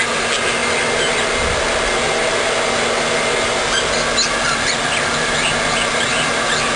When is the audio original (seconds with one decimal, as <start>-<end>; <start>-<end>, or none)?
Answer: 0.0-6.8